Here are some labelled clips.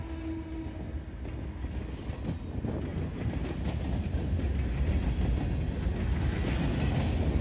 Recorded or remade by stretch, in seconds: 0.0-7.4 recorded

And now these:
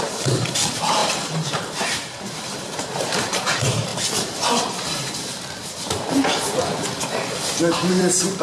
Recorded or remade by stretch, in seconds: 0.0-3.9 remade; 3.9-7.5 recorded; 7.5-8.4 remade

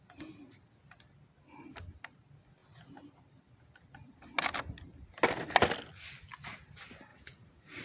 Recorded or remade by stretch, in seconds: 0.0-7.1 recorded; 7.1-7.8 remade

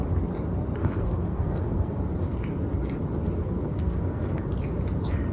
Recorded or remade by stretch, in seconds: 0.0-0.8 recorded; 0.8-2.0 remade; 2.0-3.4 recorded; 3.4-4.4 remade; 4.4-5.3 recorded